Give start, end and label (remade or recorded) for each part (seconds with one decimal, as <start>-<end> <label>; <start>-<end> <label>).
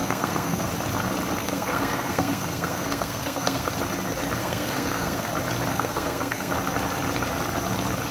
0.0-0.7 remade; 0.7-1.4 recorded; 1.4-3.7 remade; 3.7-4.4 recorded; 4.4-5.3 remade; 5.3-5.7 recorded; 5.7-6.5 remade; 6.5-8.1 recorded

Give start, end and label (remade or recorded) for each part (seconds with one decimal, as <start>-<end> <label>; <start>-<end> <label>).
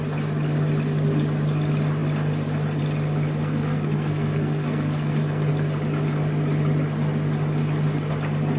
0.0-3.4 recorded; 3.4-5.5 remade; 5.5-8.6 recorded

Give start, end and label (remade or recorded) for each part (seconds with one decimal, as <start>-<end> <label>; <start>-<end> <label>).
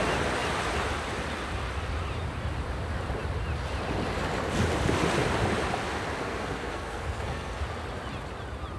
0.0-6.2 recorded; 6.2-7.6 remade; 7.6-8.8 recorded